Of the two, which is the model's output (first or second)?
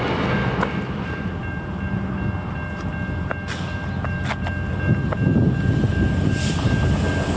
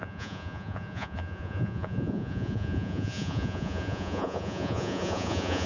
second